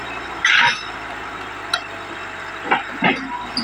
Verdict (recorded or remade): recorded